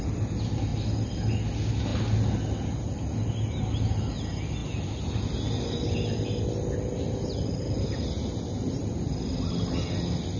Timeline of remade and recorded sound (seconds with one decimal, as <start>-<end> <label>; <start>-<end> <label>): 0.0-10.4 recorded